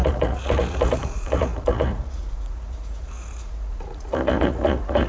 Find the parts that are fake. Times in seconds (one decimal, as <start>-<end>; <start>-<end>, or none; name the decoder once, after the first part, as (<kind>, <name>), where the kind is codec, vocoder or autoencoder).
0.0-5.1 (vocoder, Vocos)